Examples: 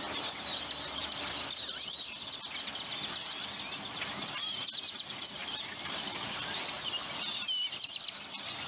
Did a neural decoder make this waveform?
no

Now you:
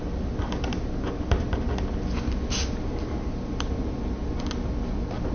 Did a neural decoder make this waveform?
no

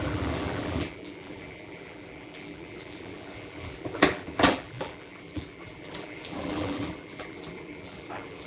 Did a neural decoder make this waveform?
yes